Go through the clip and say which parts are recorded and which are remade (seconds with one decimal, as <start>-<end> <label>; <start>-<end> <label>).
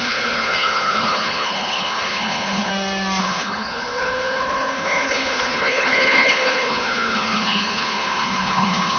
0.0-2.7 remade; 2.7-3.2 recorded; 3.2-9.0 remade